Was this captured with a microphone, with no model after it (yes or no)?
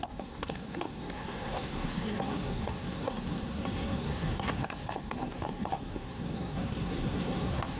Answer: no